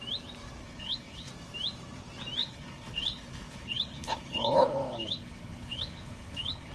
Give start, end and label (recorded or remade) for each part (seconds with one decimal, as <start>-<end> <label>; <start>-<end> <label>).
0.0-0.6 recorded; 0.6-1.3 remade; 1.3-2.4 recorded; 2.4-6.7 remade

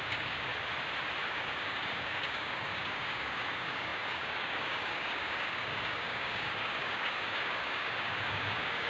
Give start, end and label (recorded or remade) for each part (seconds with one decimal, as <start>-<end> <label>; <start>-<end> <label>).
0.0-0.5 remade; 0.5-1.3 recorded; 1.3-8.9 remade